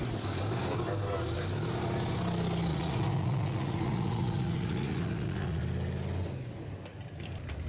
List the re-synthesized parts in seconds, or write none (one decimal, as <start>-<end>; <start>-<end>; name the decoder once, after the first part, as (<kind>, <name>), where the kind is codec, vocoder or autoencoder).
2.7-5.6 (vocoder, Vocos)